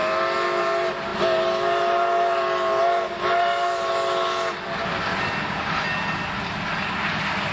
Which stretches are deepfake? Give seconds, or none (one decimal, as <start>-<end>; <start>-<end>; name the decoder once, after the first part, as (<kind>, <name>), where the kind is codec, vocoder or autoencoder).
none